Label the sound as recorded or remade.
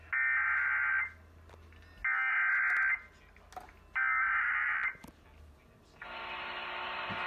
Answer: recorded